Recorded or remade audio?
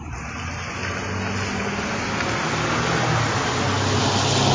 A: recorded